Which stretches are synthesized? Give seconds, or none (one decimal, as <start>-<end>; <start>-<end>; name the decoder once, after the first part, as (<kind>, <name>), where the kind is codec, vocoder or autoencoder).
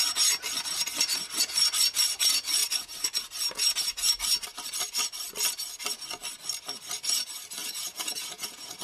7.6-8.8 (vocoder, Vocos)